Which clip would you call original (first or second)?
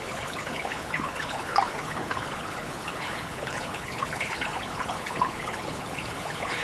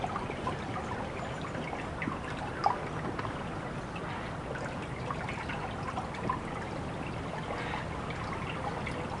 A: second